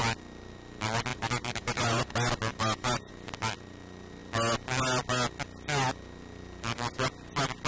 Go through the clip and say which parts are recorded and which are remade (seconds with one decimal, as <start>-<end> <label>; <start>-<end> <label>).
0.0-1.1 recorded; 1.1-2.1 remade; 2.1-2.5 recorded; 2.5-3.1 remade; 3.1-7.7 recorded